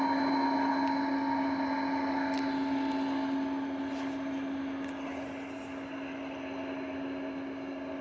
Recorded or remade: recorded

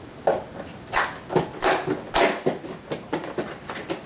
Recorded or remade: recorded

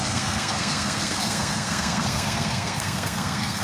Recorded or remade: remade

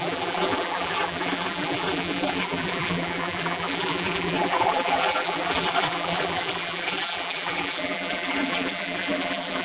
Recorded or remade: remade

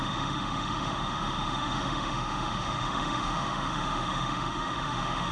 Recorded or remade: remade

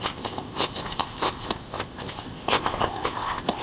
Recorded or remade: remade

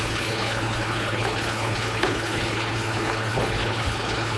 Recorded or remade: remade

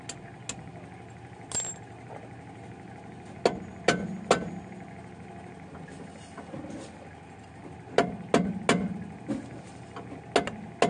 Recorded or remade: recorded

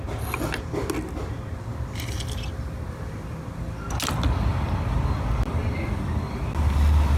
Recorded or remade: recorded